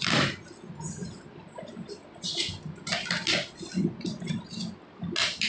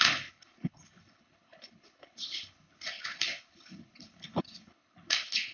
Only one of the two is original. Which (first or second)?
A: first